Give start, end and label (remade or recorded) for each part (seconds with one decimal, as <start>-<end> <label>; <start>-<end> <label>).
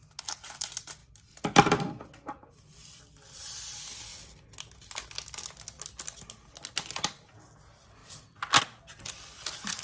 0.0-1.0 recorded; 1.0-3.0 remade; 3.0-9.8 recorded